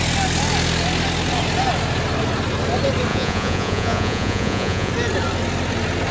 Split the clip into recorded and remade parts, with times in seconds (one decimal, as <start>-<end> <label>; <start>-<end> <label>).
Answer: 0.0-3.1 recorded; 3.1-4.9 remade; 4.9-6.1 recorded